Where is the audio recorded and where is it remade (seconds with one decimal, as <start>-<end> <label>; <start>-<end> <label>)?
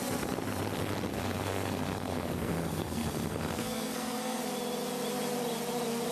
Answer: 0.0-1.1 recorded; 1.1-4.4 remade; 4.4-6.1 recorded